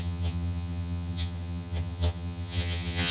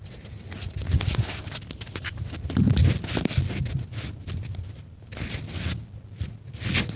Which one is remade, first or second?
first